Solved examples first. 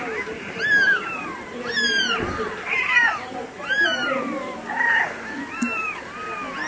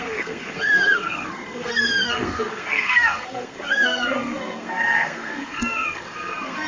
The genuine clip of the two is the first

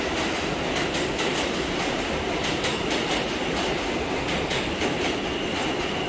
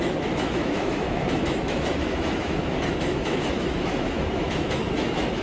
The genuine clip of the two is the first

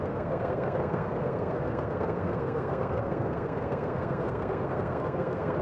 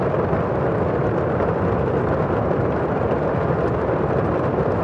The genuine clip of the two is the second